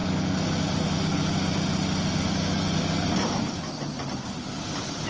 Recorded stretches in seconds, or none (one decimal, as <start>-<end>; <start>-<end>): 0.0-5.1